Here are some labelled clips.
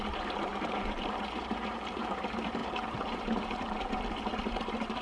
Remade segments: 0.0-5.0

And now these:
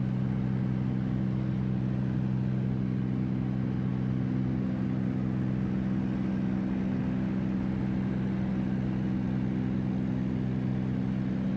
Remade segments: none

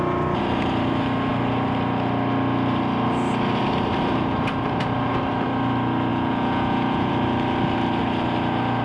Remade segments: 6.1-7.1

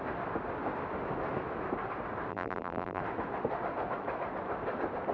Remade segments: 2.3-3.0

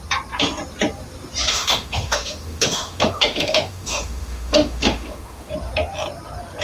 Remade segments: 1.5-5.5

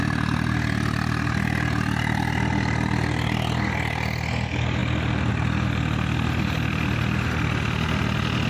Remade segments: none

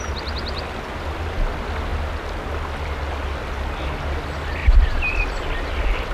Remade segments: 4.6-5.2

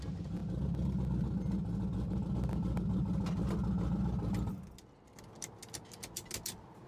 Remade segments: none